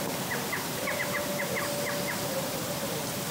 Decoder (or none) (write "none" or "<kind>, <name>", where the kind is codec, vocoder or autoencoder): none